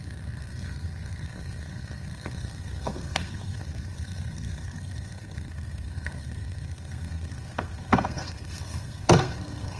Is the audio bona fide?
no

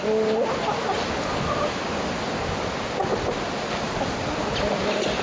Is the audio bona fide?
yes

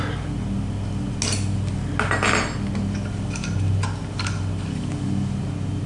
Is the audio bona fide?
yes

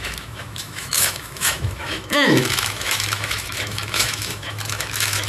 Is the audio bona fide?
no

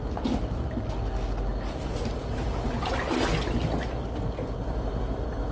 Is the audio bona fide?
yes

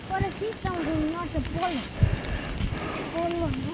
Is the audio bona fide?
yes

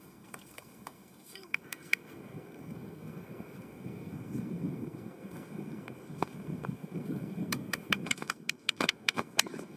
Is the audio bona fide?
no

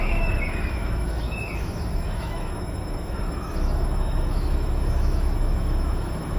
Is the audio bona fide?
no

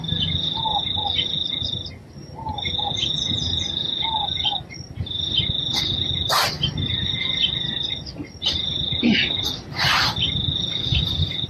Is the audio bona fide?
yes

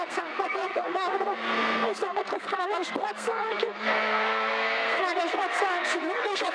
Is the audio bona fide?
no